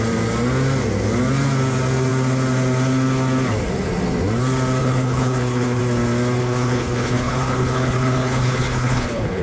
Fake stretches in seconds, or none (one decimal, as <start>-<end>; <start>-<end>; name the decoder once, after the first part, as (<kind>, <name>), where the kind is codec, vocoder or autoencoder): 4.8-5.8 (codec, HILCodec); 6.4-9.4